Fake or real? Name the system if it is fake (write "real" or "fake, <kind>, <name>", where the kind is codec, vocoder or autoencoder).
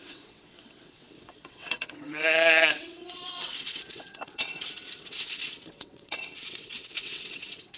fake, vocoder, WaveNeXt